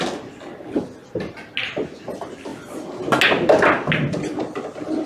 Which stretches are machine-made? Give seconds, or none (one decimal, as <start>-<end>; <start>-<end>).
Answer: none